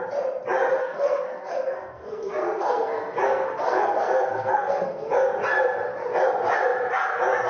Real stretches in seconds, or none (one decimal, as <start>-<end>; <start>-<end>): 0.0-0.8; 5.3-7.5